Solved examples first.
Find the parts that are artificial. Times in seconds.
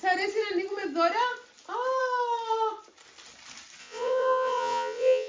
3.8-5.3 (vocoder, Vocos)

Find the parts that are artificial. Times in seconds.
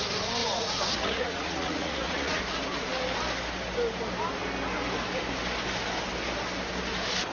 0.4-2.4 (vocoder, Vocos)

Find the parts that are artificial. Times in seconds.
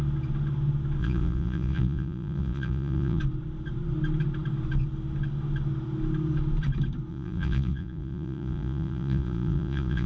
1.0-3.2 (vocoder, Vocos); 7.1-10.1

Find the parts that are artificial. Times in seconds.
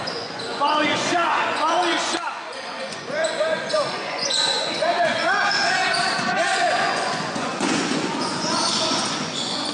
0.0-5.6 (vocoder, Vocos); 6.5-9.7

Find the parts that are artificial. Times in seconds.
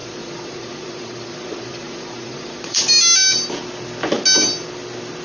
0.0-2.8 (vocoder, Vocos)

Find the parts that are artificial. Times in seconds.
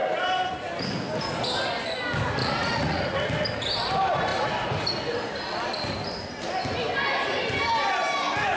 2.4-3.0 (vocoder, Vocos)